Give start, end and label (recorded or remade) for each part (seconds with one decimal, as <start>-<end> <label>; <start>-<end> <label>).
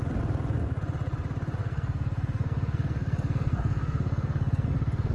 0.0-1.6 recorded; 1.6-5.1 remade